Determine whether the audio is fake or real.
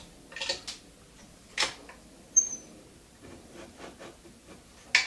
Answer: real